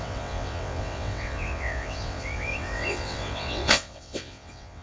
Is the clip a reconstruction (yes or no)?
yes